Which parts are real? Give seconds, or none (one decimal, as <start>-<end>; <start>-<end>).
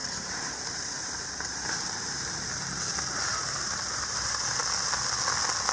2.3-3.3; 4.6-5.7